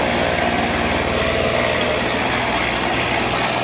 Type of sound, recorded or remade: recorded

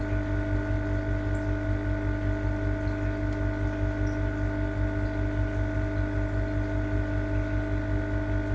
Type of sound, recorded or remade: recorded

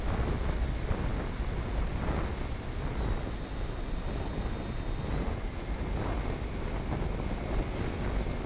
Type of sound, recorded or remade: recorded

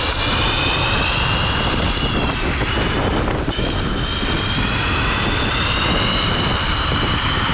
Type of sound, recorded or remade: remade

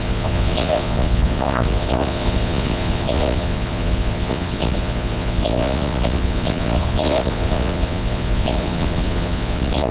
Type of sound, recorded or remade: remade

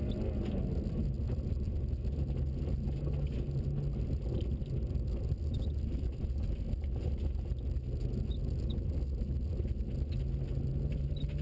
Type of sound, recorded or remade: recorded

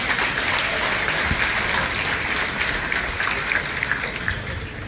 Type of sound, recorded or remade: recorded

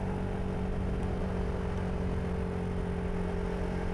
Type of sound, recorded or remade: recorded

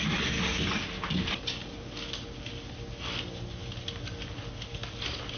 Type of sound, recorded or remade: recorded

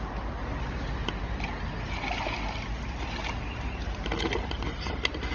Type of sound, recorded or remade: recorded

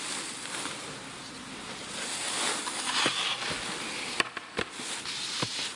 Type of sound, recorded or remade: recorded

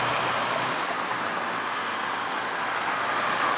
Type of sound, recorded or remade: recorded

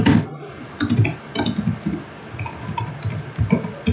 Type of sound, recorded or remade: recorded